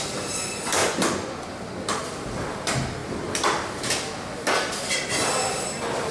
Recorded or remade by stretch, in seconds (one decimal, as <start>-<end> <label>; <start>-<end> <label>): 0.0-0.8 recorded; 0.8-1.4 remade; 1.4-6.1 recorded